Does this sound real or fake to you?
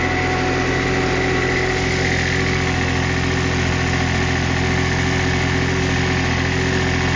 real